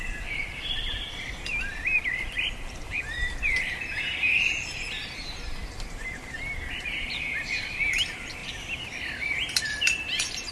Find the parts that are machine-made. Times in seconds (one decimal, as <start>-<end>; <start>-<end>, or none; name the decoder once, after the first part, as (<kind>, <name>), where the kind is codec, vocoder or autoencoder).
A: 0.0-8.4 (vocoder, BigVGAN v2); 9.6-10.5

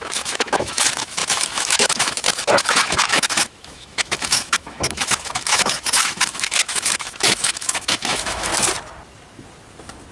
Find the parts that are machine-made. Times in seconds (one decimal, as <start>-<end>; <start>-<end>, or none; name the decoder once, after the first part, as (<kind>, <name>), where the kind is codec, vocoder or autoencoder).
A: 0.0-8.5 (autoencoder, DAC-VAE)

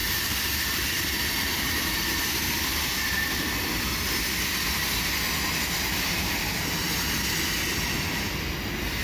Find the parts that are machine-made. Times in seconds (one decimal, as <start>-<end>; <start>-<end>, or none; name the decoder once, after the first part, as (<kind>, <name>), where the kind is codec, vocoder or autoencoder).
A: 0.0-1.6 (vocoder, BigVGAN v2)